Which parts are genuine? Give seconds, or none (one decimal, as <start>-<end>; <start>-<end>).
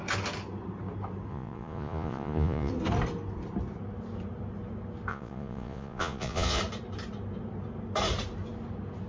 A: 0.0-1.3; 2.7-5.1; 6.6-9.1